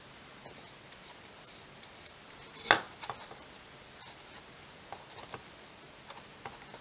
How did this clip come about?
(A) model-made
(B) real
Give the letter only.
B